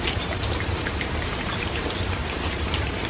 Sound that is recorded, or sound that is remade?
remade